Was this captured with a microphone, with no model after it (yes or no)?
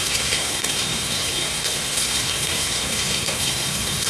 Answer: no